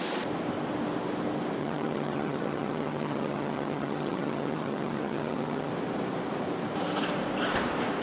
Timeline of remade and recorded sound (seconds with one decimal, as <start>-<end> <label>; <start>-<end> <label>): 0.0-1.6 recorded; 1.6-5.7 remade; 5.7-8.0 recorded